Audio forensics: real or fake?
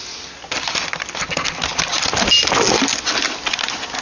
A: real